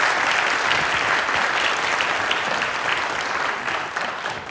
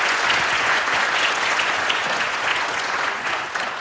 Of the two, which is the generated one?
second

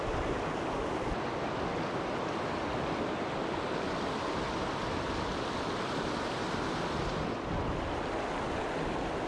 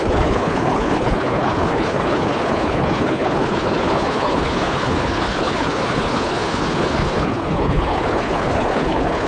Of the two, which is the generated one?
second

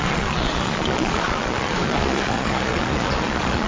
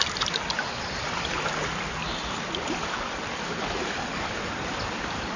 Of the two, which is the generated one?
first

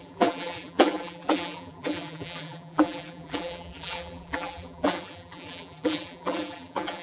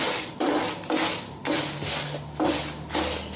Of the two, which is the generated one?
first